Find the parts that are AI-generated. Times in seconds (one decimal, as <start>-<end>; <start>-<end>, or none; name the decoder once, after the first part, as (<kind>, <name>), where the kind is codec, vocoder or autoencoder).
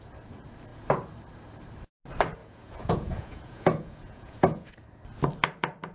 2.4-4.7 (vocoder, Vocos)